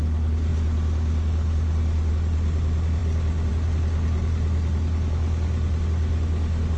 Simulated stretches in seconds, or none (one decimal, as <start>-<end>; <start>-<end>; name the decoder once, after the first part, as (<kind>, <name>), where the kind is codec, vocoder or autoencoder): none